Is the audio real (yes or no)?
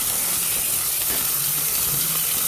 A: no